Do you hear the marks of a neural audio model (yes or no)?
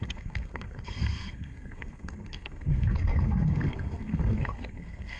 yes